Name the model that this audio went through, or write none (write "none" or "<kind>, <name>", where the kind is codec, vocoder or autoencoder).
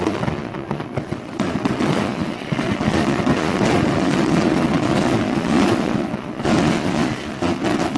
vocoder, Vocos